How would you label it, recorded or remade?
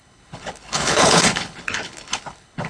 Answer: remade